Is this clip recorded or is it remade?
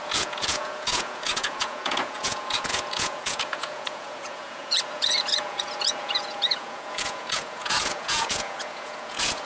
remade